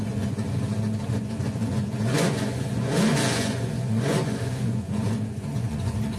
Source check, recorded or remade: remade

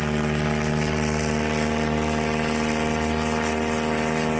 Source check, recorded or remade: recorded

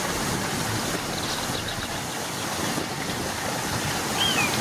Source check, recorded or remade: recorded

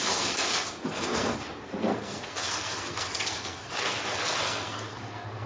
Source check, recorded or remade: remade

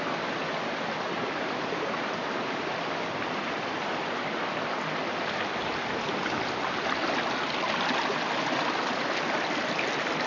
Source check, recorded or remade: recorded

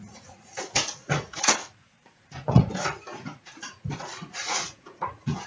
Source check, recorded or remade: remade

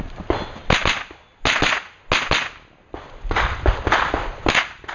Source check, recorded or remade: recorded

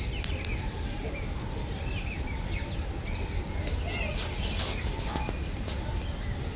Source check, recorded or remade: recorded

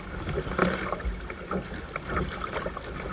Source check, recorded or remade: recorded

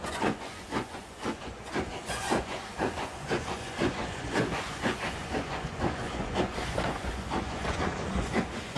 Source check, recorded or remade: remade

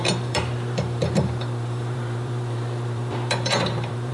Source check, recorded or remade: remade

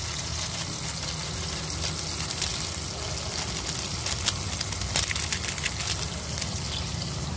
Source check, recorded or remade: recorded